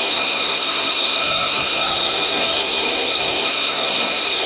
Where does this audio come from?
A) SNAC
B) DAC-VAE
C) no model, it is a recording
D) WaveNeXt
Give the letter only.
A